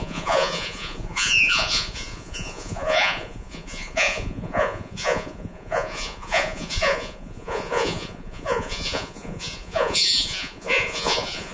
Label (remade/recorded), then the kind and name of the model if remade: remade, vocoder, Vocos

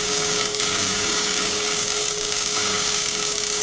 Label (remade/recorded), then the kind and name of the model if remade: remade, codec, DAC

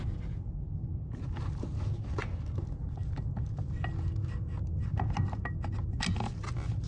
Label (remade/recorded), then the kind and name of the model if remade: recorded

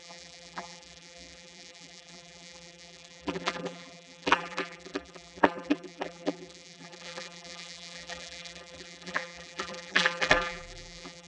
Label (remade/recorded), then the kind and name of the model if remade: remade, vocoder, BigVGAN v2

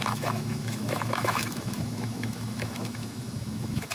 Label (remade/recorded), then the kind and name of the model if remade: remade, autoencoder, DAC-VAE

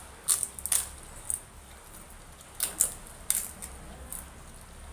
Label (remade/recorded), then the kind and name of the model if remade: recorded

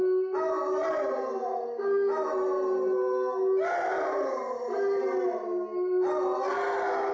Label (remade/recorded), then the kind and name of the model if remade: recorded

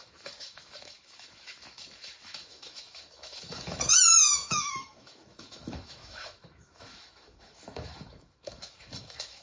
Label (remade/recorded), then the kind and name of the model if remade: remade, autoencoder, DAC-VAE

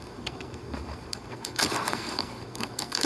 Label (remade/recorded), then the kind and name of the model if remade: remade, codec, SNAC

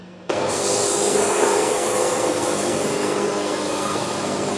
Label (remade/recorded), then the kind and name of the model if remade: remade, codec, SNAC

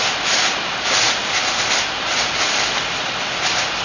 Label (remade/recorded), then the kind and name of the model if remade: recorded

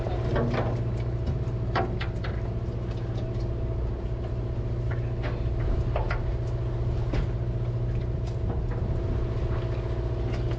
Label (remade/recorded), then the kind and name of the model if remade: recorded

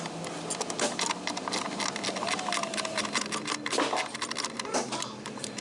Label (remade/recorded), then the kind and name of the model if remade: recorded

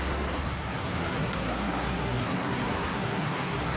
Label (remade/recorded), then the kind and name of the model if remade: remade, codec, SNAC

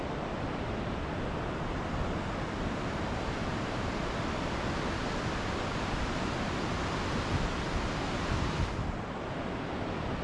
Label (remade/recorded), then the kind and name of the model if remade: recorded